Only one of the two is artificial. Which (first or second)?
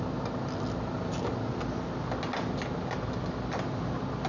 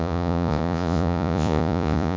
second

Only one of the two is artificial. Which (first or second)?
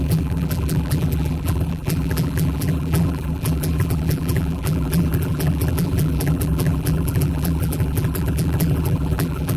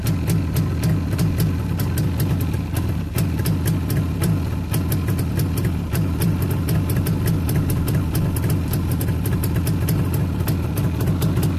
first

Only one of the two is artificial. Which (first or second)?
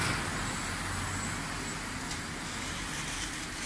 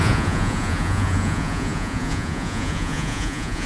second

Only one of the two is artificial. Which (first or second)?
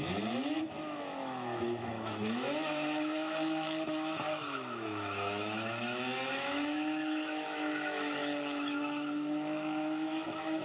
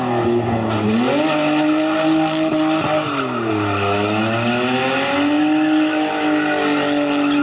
first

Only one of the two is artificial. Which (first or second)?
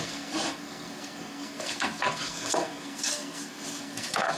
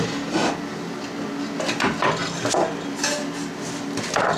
first